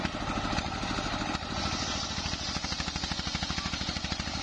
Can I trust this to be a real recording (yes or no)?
yes